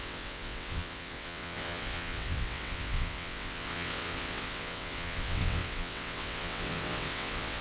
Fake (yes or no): yes